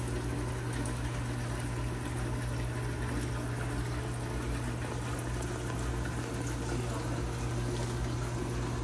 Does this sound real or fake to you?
real